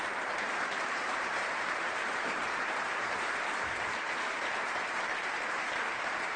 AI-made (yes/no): yes